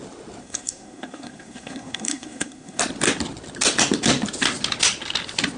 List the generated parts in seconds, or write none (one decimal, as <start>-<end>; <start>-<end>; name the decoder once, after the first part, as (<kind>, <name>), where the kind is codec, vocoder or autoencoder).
0.4-2.8 (codec, SNAC)